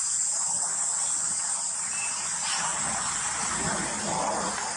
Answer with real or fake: real